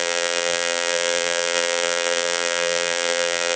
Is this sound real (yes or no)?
no